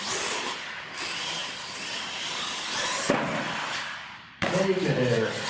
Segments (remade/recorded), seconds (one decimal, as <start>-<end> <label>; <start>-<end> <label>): 0.0-5.5 recorded